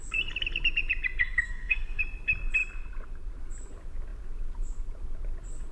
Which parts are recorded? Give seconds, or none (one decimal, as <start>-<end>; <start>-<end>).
0.0-1.2; 2.0-5.7